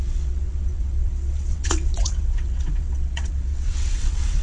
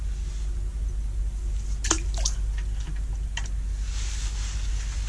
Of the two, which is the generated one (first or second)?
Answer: first